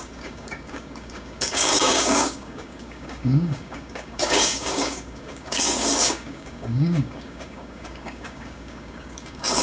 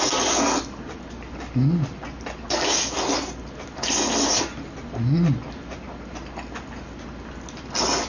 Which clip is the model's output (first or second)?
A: first